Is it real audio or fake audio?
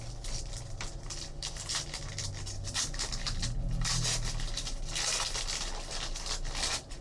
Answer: real